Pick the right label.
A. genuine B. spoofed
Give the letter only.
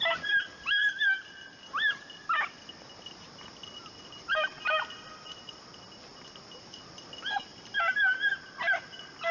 A